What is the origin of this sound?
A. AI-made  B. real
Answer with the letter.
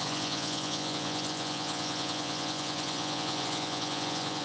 A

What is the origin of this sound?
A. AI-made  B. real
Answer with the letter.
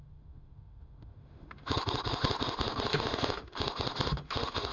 A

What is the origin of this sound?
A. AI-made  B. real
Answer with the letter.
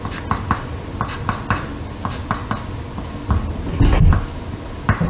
B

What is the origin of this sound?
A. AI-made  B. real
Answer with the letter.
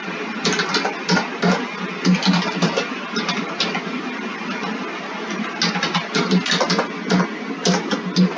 B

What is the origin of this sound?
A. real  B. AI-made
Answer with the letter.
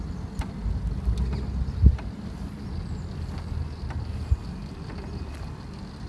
A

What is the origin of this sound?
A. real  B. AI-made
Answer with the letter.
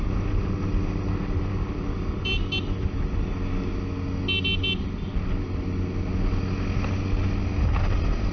A